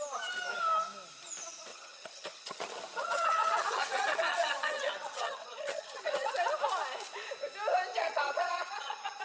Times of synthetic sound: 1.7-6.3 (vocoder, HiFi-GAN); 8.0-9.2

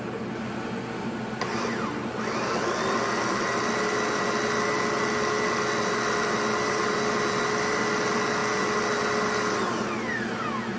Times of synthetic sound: none